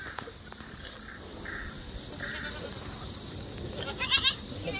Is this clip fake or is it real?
real